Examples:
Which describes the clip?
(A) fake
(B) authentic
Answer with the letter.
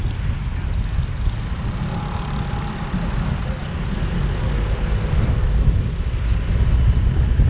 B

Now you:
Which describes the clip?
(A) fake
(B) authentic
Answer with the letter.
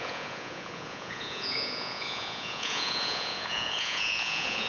A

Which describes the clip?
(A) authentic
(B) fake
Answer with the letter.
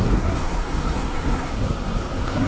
B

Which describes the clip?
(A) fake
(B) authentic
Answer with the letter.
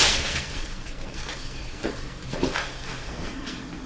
A